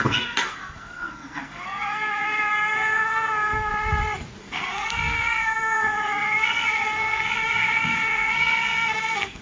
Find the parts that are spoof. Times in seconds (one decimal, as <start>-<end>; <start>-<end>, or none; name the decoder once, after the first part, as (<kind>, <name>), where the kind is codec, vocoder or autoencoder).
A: 0.0-3.7 (codec, SNAC); 4.4-9.4